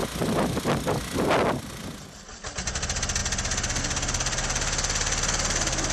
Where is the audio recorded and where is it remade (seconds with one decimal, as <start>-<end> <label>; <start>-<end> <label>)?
0.0-5.9 recorded